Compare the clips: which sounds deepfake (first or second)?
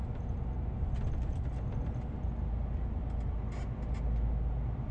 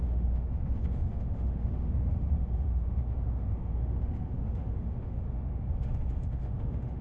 second